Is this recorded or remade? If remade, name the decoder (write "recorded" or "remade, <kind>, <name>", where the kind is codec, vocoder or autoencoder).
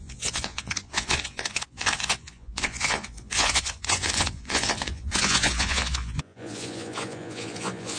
remade, vocoder, Vocos